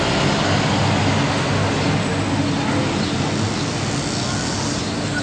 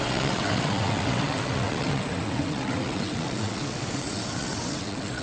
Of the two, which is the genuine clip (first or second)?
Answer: first